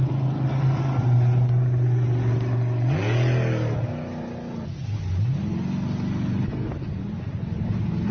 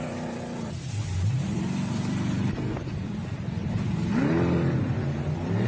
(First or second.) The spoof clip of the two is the second